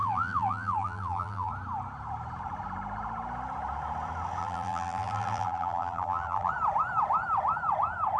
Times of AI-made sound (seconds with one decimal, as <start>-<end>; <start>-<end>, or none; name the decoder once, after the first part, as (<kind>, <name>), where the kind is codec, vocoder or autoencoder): 0.0-1.5 (vocoder, BigVGAN v2); 4.4-6.5